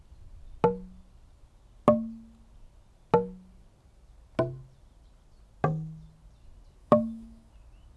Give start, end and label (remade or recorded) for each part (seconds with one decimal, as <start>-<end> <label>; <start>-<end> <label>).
0.0-6.8 recorded; 6.8-7.5 remade; 7.5-8.0 recorded